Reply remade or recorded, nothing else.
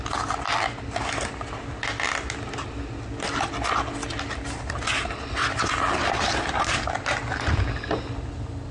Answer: recorded